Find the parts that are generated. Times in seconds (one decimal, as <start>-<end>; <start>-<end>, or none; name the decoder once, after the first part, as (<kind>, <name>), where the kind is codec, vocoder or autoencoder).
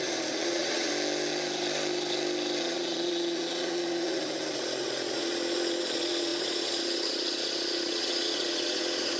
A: 0.0-0.9 (vocoder, Vocos); 2.6-9.2